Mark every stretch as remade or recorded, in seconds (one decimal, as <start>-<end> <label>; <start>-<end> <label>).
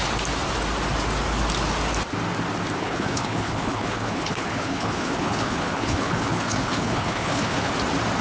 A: 0.0-2.8 recorded; 2.8-7.7 remade; 7.7-8.2 recorded